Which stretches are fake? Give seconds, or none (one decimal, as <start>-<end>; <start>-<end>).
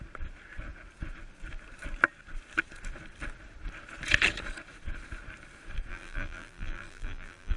5.9-7.6